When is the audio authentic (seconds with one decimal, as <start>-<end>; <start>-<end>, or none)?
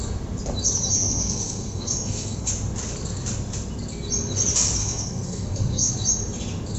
0.0-0.9; 2.5-4.8; 5.9-6.8